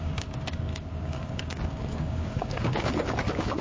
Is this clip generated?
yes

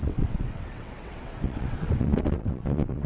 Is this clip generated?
yes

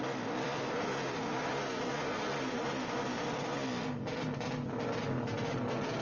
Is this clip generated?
no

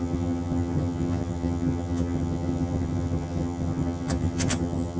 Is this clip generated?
yes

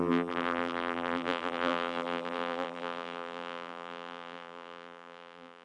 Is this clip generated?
yes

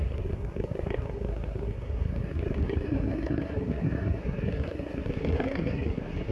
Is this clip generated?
yes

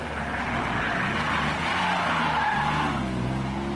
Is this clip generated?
no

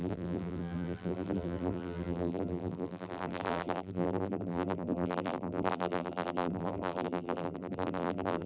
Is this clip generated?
yes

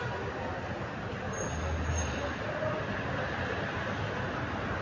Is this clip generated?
no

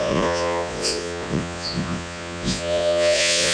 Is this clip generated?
yes